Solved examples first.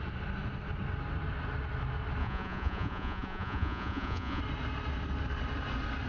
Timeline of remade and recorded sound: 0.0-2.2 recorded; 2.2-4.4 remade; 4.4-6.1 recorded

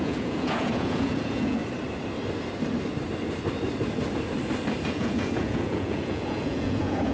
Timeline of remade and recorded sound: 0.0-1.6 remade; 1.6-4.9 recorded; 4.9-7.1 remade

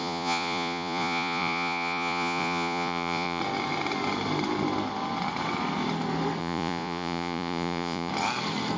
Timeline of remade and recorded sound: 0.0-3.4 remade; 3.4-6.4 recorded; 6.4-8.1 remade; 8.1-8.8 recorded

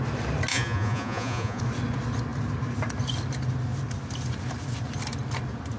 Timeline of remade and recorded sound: 0.0-0.5 recorded; 0.5-1.6 remade; 1.6-5.8 recorded

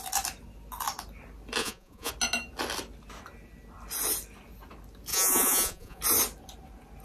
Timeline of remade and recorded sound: 0.0-1.6 recorded; 1.6-2.1 remade; 2.1-5.1 recorded; 5.1-6.0 remade; 6.0-7.0 recorded

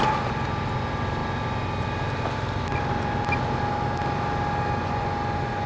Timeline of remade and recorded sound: 0.0-4.8 recorded; 4.8-5.7 remade

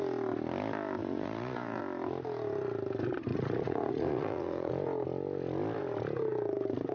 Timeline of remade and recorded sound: 0.0-1.0 recorded; 1.0-1.8 remade; 1.8-3.3 recorded; 3.3-4.7 remade; 4.7-6.9 recorded

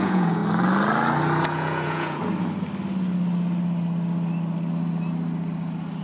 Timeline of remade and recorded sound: 0.0-0.4 remade; 0.4-1.4 recorded; 1.4-2.2 remade; 2.2-6.0 recorded